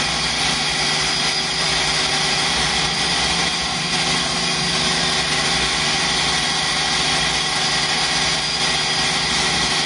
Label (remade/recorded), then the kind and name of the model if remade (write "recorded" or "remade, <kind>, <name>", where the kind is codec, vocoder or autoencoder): recorded